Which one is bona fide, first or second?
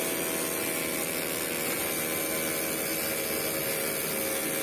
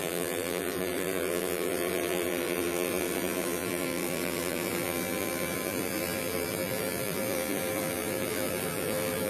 first